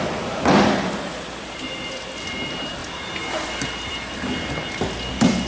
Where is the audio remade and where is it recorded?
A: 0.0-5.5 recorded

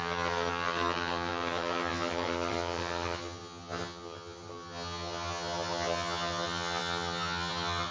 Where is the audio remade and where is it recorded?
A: 0.0-7.9 remade

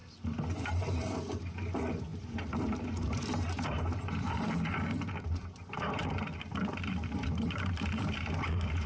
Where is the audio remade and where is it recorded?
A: 0.0-0.6 recorded; 0.6-6.3 remade; 6.3-6.8 recorded; 6.8-8.9 remade